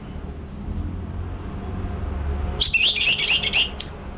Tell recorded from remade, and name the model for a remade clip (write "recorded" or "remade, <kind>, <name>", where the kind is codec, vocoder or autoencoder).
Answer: recorded